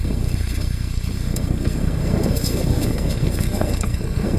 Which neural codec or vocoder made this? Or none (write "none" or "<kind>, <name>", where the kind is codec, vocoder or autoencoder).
codec, SNAC